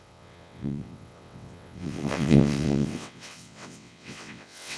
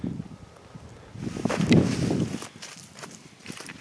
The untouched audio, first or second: second